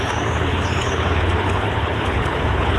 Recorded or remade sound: remade